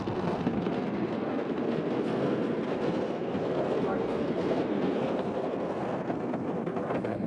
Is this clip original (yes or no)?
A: no